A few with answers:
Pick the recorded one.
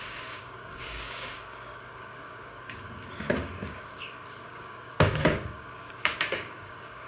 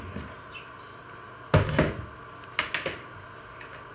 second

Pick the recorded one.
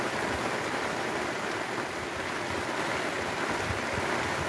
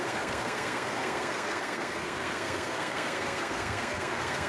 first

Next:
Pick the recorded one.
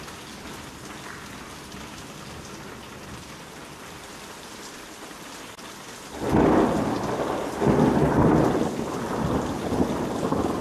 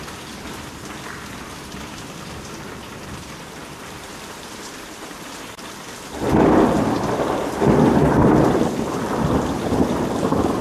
first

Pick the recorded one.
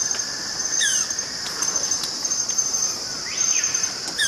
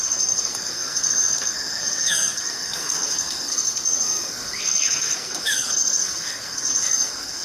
first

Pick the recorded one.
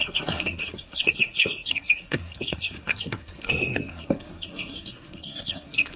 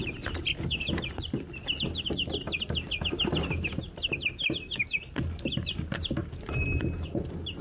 second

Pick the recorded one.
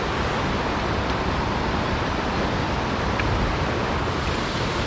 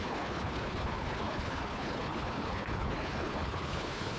first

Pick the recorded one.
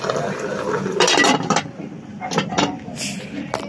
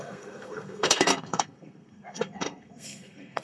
first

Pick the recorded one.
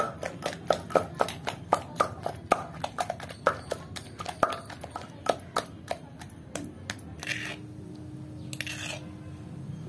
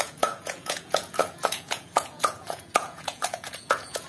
first